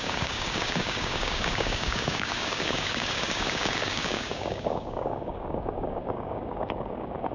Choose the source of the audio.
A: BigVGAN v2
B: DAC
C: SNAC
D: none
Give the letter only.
B